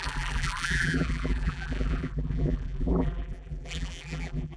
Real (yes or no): no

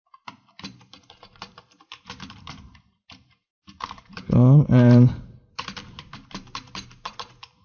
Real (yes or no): no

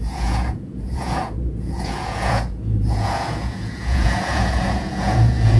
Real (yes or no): no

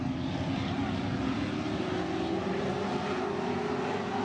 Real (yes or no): yes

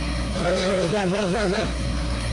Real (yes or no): no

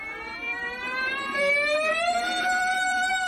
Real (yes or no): no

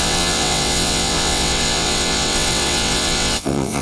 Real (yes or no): no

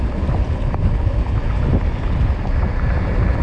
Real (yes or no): yes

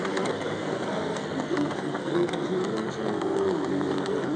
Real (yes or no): no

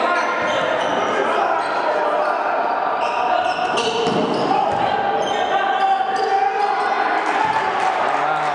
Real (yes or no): yes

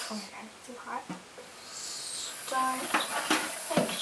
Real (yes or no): yes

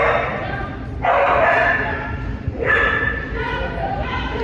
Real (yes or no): yes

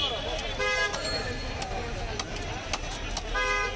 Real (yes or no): yes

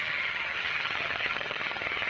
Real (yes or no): no